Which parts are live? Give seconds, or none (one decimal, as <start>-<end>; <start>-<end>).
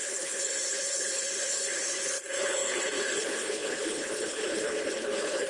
none